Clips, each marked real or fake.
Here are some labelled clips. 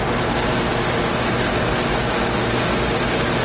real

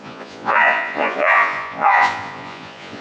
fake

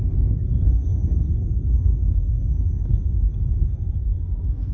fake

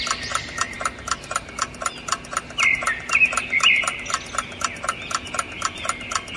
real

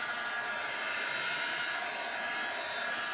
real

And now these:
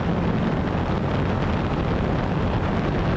real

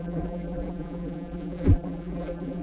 fake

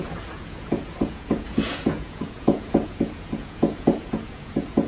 fake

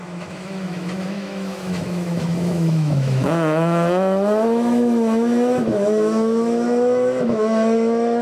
fake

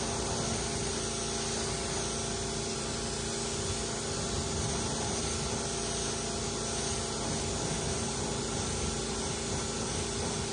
real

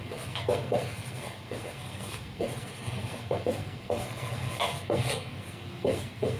fake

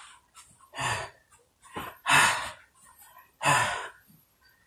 real